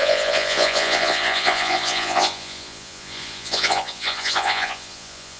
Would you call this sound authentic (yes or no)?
no